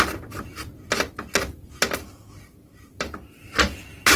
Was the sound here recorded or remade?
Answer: recorded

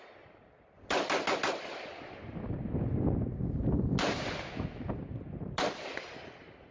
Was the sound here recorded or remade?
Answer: recorded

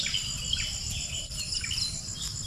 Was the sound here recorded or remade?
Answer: recorded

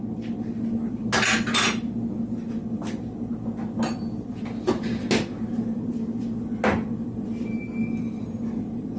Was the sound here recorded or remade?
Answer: recorded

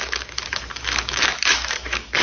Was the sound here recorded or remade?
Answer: remade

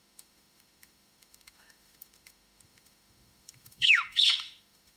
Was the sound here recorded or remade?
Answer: remade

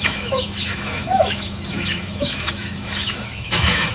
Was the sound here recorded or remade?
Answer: remade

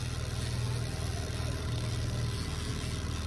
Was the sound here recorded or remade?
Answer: recorded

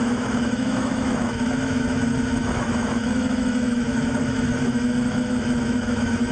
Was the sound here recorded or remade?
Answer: remade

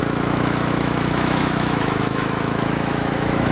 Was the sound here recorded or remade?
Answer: remade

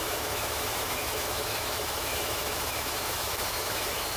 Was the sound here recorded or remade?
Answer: remade